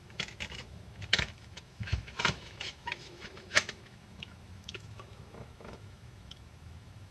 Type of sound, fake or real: fake